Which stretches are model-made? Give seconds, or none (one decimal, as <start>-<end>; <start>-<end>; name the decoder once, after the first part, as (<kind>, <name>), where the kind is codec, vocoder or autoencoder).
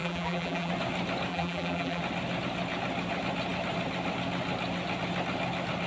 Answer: 0.0-0.7 (vocoder, BigVGAN v2); 1.3-2.0